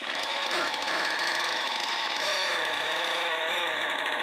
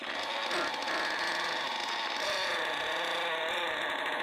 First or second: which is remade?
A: first